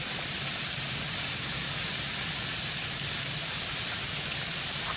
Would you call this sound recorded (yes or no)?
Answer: yes